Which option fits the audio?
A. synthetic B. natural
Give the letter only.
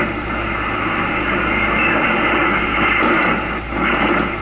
B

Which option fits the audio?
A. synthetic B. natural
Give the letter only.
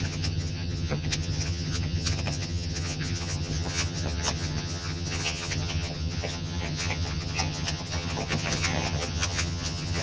A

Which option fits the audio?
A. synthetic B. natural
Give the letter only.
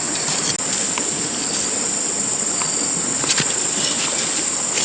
B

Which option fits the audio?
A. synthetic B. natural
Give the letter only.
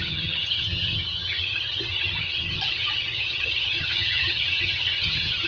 A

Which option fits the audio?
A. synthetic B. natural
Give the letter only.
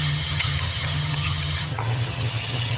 A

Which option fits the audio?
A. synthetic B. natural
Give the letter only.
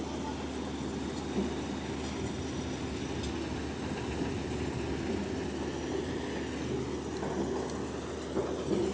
B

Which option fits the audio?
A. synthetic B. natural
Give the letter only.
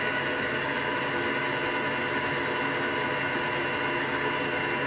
B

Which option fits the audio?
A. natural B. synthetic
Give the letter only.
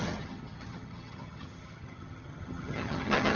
B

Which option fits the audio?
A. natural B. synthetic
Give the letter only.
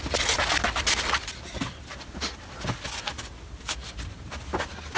A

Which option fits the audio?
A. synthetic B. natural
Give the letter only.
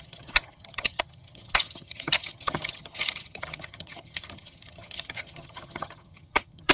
A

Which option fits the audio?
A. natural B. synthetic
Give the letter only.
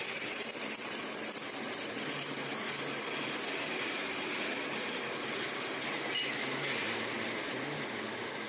A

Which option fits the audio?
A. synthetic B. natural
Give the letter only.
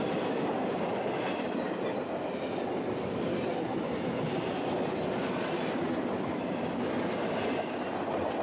B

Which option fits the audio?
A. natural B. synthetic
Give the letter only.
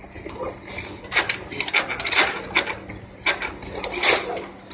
A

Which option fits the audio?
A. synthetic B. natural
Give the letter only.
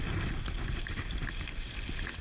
B